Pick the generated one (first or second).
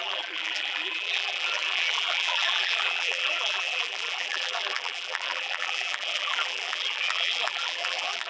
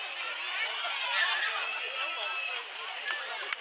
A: first